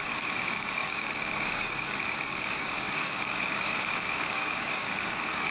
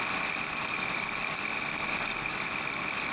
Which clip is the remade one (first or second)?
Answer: first